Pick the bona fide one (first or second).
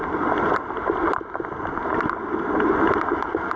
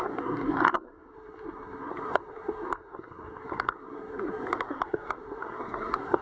first